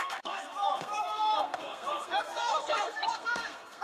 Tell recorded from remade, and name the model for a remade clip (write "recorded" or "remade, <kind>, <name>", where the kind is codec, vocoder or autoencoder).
remade, codec, SNAC